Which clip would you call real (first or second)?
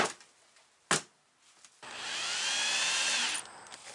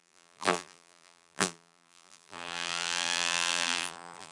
first